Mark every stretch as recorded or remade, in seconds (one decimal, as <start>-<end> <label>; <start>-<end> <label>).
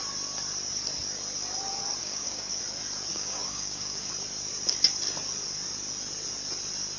0.0-2.0 recorded; 2.0-2.6 remade; 2.6-3.1 recorded; 3.1-4.1 remade; 4.1-7.0 recorded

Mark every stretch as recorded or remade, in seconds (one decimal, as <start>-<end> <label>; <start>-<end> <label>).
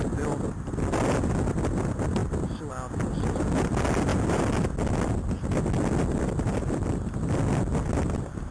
0.0-8.5 recorded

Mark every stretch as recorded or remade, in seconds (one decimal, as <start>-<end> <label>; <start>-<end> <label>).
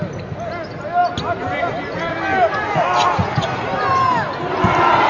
0.0-5.1 recorded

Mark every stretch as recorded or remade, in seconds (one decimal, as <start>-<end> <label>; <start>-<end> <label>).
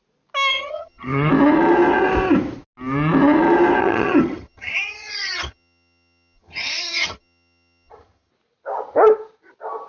0.0-0.5 recorded; 0.5-1.3 remade; 1.3-3.8 recorded; 3.8-8.3 remade; 8.3-9.9 recorded